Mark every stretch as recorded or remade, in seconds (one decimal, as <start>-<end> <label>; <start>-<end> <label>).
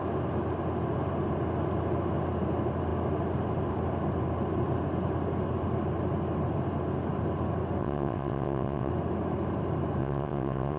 0.0-7.8 recorded; 7.8-8.9 remade; 8.9-10.0 recorded; 10.0-10.8 remade